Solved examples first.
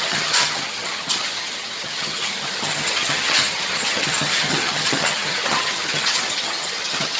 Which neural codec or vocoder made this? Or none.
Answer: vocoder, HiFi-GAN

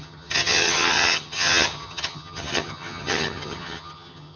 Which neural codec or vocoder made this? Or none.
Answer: vocoder, HiFi-GAN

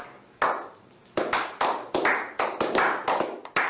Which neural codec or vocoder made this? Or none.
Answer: none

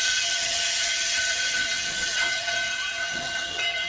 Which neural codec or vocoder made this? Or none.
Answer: vocoder, HiFi-GAN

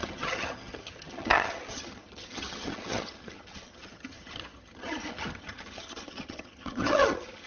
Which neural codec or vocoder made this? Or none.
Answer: vocoder, HiFi-GAN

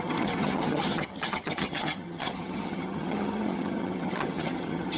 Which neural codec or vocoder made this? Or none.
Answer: vocoder, HiFi-GAN